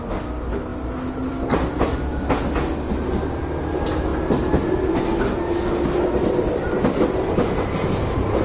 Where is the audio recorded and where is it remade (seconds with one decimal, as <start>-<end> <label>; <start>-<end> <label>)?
0.0-8.4 recorded